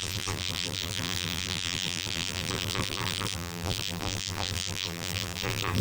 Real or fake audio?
fake